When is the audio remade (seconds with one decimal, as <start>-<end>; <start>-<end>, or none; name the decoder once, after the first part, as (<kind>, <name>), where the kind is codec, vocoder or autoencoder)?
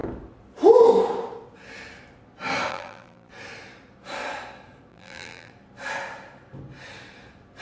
2.7-3.3 (vocoder, BigVGAN v2); 4.9-5.5